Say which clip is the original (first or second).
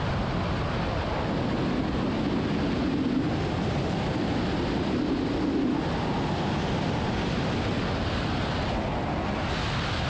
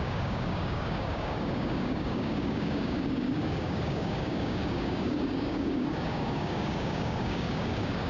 first